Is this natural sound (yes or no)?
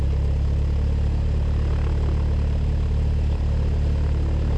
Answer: yes